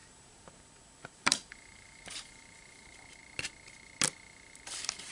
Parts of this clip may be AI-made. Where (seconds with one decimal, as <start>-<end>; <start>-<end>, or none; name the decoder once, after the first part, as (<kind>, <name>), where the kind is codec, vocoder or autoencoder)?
0.0-3.2 (vocoder, BigVGAN v2)